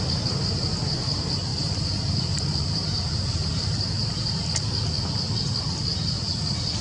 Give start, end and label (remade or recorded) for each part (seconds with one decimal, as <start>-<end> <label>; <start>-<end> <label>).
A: 0.0-1.5 recorded; 1.5-4.5 remade; 4.5-6.8 recorded